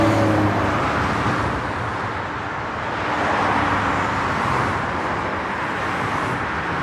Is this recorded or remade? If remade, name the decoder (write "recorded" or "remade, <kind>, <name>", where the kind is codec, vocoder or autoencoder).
recorded